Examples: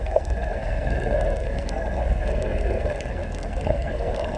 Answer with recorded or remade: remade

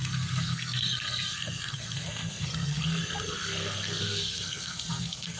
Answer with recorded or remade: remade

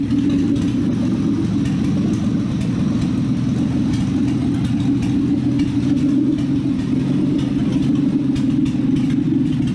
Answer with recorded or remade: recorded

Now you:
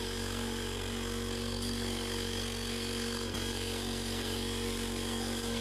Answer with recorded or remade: remade